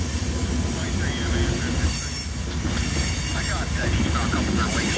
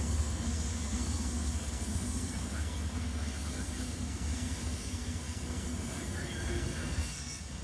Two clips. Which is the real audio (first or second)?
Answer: first